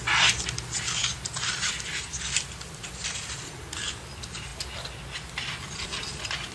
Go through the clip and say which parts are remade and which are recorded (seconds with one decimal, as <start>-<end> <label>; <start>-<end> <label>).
0.0-6.5 recorded